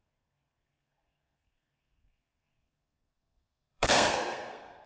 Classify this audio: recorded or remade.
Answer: remade